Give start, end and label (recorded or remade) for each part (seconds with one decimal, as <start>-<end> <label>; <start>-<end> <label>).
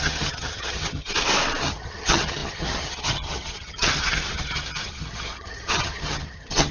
0.0-1.1 remade; 1.1-1.6 recorded; 1.6-6.7 remade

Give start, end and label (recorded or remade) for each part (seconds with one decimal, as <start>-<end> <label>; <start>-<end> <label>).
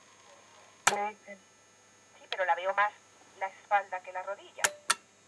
0.0-5.3 recorded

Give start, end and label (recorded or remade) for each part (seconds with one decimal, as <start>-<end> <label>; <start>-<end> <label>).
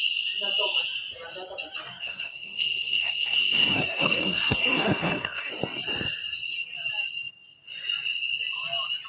0.0-2.0 recorded; 2.0-5.5 remade; 5.5-9.1 recorded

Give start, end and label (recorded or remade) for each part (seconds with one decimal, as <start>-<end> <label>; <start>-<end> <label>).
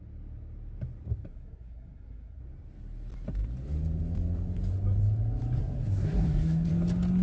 0.0-1.3 recorded; 1.3-2.4 remade; 2.4-5.6 recorded; 5.6-6.7 remade; 6.7-7.2 recorded